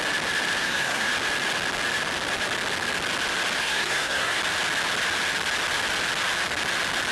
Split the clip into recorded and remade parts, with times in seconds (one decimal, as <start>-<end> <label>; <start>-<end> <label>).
0.0-0.6 recorded; 0.6-1.1 remade; 1.1-3.6 recorded; 3.6-4.4 remade; 4.4-7.1 recorded